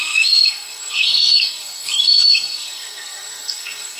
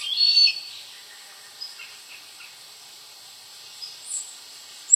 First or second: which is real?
second